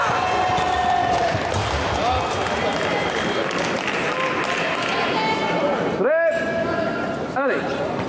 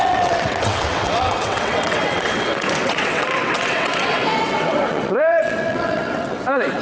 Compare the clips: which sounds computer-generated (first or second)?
second